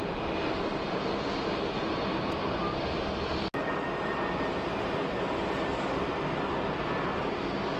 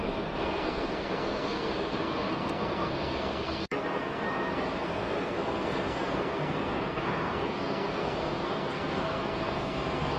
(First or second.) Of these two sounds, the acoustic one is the first